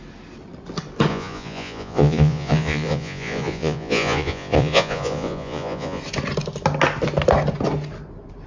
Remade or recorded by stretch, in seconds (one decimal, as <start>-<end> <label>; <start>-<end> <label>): 0.0-1.1 recorded; 1.1-6.0 remade; 6.0-8.5 recorded